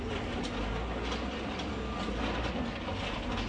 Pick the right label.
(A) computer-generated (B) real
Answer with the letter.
B